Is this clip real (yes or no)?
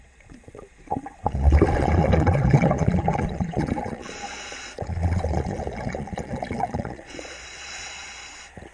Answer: no